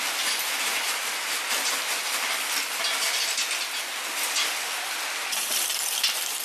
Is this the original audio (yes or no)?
yes